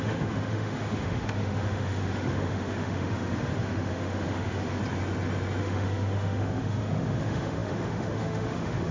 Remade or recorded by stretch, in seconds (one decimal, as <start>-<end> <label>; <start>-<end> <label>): 0.0-4.8 remade; 4.8-5.6 recorded; 5.6-8.9 remade